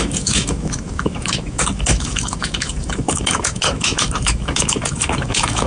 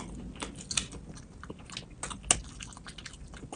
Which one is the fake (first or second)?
first